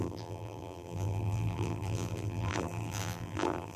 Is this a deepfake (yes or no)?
yes